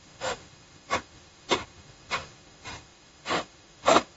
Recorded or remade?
remade